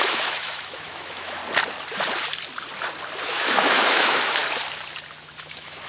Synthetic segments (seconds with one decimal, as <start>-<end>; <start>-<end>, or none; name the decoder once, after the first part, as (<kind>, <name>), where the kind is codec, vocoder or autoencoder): 0.0-1.4 (autoencoder, DAC-VAE); 3.2-4.4; 5.4-5.9